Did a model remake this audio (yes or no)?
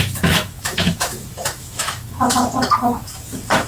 yes